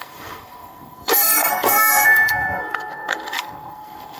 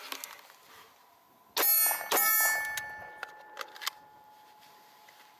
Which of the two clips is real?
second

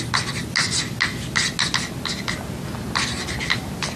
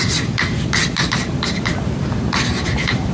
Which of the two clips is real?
first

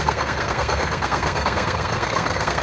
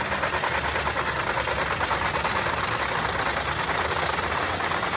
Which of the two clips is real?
second